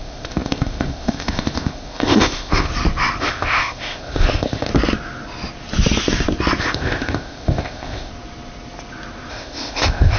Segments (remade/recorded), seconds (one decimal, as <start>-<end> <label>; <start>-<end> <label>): 0.0-2.7 remade; 2.7-3.2 recorded; 3.2-4.7 remade; 4.7-6.6 recorded; 6.6-8.1 remade; 8.1-9.3 recorded; 9.3-10.2 remade